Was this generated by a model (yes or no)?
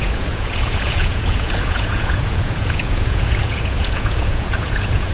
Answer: yes